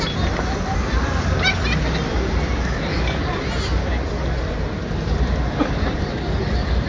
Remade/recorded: recorded